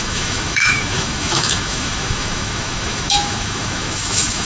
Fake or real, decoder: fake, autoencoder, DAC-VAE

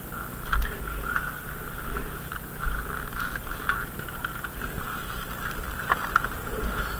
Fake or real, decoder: real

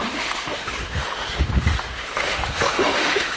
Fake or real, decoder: fake, autoencoder, DAC-VAE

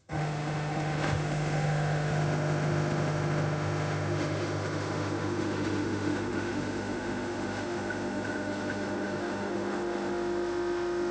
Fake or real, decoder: fake, autoencoder, DAC-VAE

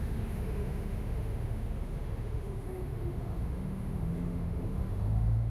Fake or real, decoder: fake, autoencoder, DAC-VAE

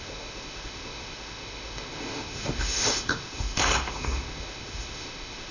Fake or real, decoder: fake, autoencoder, DAC-VAE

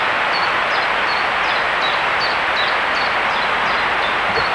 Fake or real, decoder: real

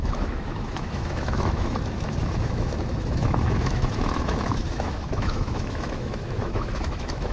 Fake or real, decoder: fake, autoencoder, DAC-VAE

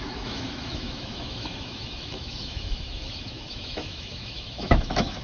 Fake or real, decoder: fake, autoencoder, DAC-VAE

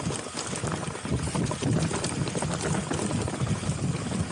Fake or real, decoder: real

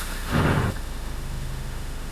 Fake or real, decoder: fake, autoencoder, DAC-VAE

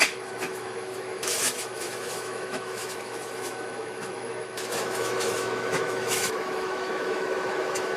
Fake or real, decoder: fake, autoencoder, DAC-VAE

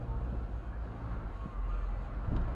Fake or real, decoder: real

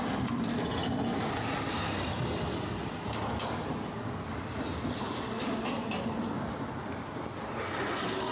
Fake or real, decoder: real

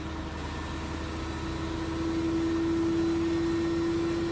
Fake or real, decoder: real